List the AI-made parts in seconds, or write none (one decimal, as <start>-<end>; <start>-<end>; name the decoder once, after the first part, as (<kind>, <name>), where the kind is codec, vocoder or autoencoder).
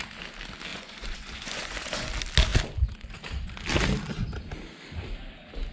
0.7-2.1 (vocoder, Vocos)